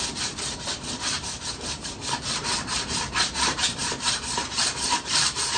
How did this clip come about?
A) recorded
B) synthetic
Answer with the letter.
B